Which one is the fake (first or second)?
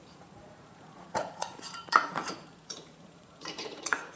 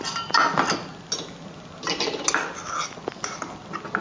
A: first